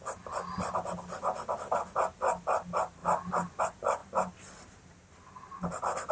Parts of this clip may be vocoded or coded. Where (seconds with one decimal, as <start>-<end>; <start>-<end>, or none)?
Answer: none

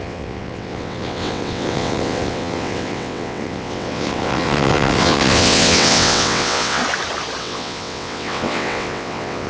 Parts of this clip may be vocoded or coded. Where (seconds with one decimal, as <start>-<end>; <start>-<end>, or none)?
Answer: 0.0-6.8; 7.4-9.5

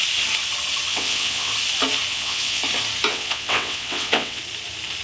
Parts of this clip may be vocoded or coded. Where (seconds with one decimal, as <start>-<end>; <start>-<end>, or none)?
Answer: 0.9-1.5; 2.1-2.6; 3.1-4.4

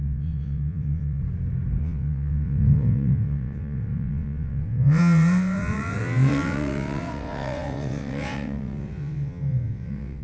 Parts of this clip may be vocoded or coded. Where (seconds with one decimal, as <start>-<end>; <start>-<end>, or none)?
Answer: 0.0-1.2; 1.8-10.2

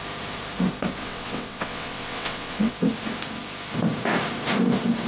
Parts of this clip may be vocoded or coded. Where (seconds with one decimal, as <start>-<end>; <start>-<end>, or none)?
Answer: 1.0-2.7

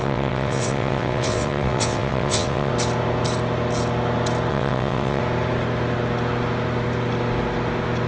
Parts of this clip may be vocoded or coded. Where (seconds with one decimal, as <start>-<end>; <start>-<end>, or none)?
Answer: 0.0-2.7; 4.5-5.2